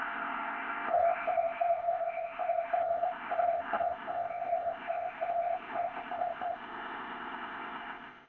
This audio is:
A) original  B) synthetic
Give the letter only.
B